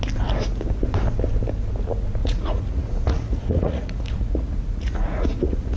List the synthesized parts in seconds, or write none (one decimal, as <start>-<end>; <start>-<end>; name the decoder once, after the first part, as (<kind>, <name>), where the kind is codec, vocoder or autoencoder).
2.2-5.8 (vocoder, Vocos)